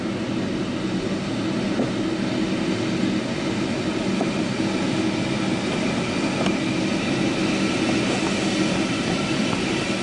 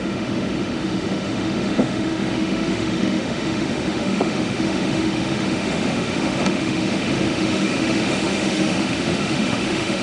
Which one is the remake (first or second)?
second